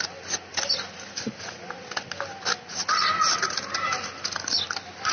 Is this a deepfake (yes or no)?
no